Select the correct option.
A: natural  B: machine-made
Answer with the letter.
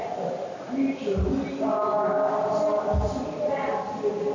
A